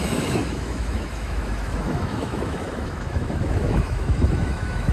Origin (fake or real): fake